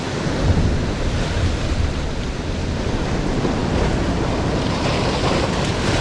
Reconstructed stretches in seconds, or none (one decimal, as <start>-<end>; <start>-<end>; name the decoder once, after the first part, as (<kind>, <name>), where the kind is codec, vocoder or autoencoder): none